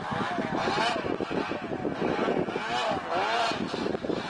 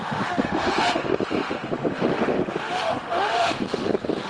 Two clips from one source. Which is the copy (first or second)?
second